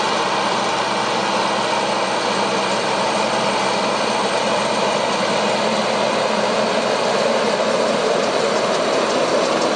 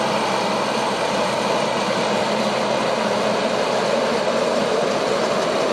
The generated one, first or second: second